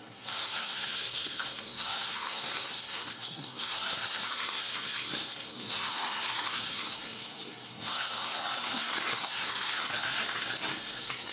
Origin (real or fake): fake